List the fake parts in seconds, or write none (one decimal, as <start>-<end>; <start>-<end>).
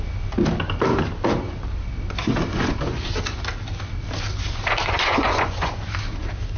2.5-3.1; 4.8-5.7